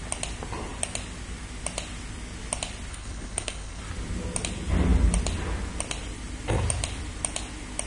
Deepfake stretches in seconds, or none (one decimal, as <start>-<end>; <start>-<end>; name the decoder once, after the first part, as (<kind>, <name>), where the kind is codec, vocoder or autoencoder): 2.9-3.8 (codec, HILCodec)